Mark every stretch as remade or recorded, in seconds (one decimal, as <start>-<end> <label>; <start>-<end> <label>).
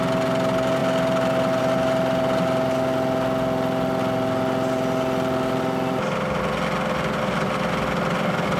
0.0-8.6 recorded